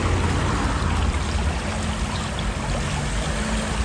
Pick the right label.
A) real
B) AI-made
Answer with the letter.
A